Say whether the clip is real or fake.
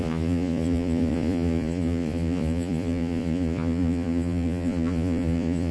fake